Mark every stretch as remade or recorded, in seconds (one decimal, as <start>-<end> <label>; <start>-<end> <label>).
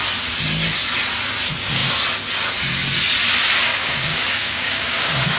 0.0-3.7 recorded; 3.7-5.4 remade